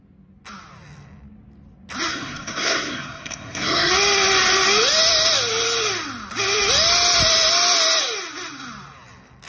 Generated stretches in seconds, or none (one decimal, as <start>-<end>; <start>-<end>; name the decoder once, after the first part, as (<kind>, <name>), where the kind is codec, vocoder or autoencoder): 2.1-3.9 (codec, SNAC)